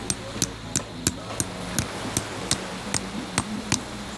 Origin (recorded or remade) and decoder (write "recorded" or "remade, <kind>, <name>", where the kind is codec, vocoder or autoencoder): recorded